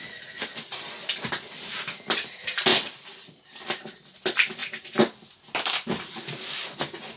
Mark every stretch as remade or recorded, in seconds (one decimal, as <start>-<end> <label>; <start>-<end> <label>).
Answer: 0.0-2.7 recorded; 2.7-3.7 remade; 3.7-7.2 recorded